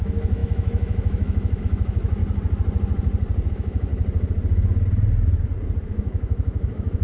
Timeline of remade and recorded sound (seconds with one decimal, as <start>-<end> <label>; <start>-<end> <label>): 0.0-2.2 remade; 2.2-3.5 recorded; 3.5-3.9 remade; 3.9-5.8 recorded; 5.8-7.0 remade